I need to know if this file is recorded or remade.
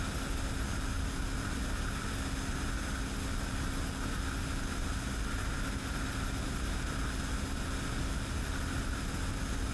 recorded